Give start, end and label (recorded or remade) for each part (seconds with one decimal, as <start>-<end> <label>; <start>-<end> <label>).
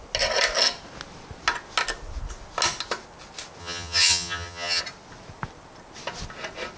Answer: 0.0-3.6 recorded; 3.6-4.8 remade; 4.8-6.8 recorded